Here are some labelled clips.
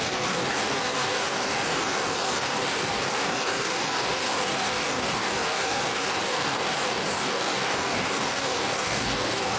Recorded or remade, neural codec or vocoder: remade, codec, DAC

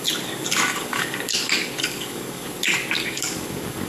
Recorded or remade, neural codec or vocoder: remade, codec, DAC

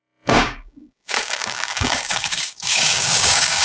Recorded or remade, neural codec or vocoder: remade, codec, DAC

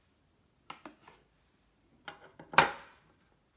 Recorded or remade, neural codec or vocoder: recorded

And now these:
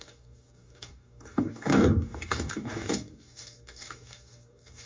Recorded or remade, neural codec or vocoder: remade, codec, DAC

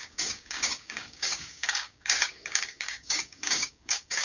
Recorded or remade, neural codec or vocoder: remade, codec, DAC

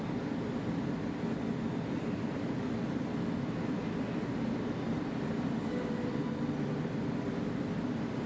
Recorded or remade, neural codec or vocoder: recorded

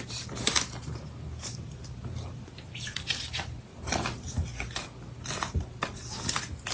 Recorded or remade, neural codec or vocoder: recorded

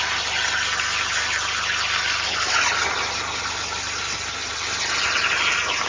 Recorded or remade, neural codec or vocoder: recorded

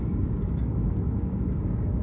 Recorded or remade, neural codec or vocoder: remade, codec, DAC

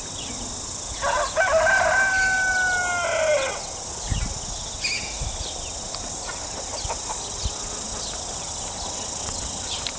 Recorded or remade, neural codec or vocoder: recorded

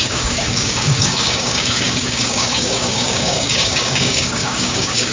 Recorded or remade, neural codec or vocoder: remade, codec, DAC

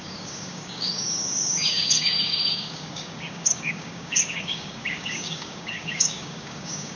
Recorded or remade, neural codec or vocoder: remade, codec, DAC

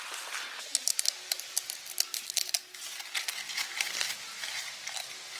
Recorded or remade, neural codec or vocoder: recorded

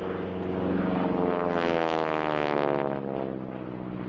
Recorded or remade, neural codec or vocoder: recorded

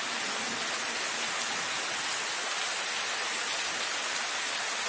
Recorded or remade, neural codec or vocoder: recorded